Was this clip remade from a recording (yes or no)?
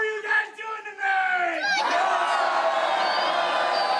no